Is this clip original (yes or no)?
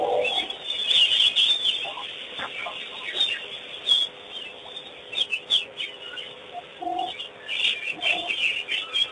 yes